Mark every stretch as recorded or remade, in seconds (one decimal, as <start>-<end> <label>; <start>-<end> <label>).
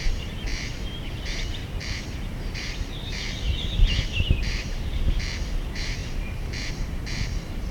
0.0-7.7 remade